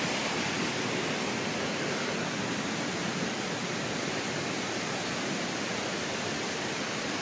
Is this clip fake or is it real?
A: real